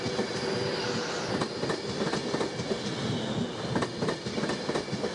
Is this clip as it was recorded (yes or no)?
yes